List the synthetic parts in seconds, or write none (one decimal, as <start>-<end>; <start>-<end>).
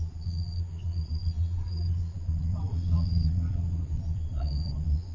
0.0-5.1